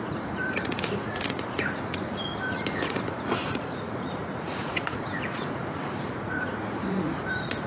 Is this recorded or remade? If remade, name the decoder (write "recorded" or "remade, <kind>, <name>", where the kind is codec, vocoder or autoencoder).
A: remade, vocoder, Vocos